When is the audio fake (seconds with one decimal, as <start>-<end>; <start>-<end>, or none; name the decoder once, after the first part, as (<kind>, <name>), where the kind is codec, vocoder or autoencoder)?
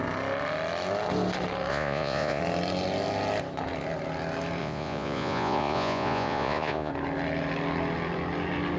1.7-2.4 (vocoder, Vocos); 4.6-6.9